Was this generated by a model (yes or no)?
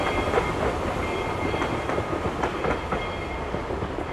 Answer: no